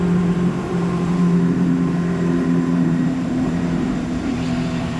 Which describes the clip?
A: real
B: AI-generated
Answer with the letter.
B